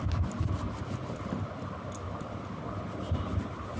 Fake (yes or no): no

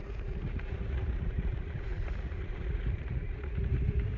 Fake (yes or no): yes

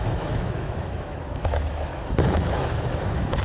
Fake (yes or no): yes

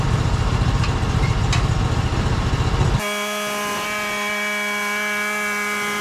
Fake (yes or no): no